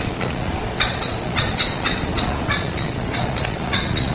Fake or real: fake